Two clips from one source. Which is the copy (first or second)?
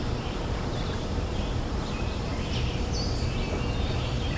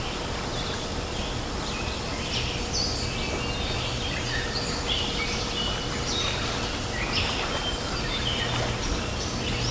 first